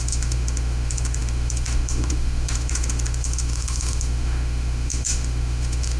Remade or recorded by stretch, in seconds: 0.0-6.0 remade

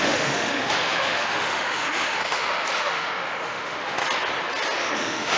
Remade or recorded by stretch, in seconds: 0.0-4.0 remade; 4.0-4.8 recorded; 4.8-5.4 remade

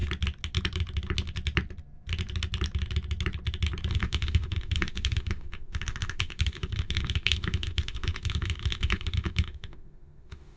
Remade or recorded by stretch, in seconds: 0.0-3.9 recorded; 3.9-10.6 remade

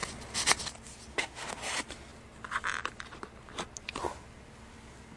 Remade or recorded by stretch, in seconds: 0.0-1.1 recorded; 1.1-1.6 remade; 1.6-5.2 recorded

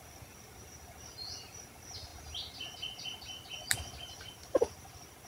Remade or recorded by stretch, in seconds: 0.0-5.3 recorded

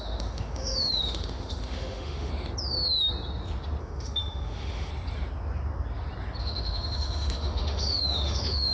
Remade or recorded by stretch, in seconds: 0.0-2.3 remade; 2.3-3.8 recorded; 3.8-4.9 remade; 4.9-6.4 recorded; 6.4-8.7 remade

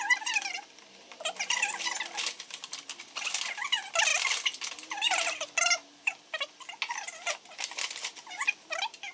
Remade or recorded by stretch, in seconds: 0.0-9.1 recorded

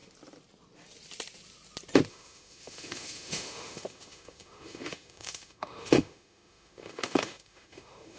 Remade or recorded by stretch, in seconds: 0.0-2.1 recorded; 2.1-8.2 remade